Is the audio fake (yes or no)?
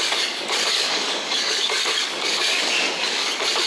yes